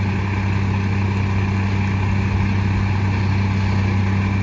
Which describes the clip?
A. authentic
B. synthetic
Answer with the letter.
A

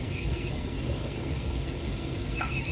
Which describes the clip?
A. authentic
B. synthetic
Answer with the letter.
B